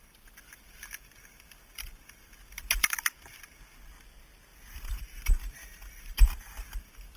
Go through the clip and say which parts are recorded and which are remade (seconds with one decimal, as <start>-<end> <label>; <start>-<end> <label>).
0.0-3.1 remade; 3.1-4.5 recorded; 4.5-7.2 remade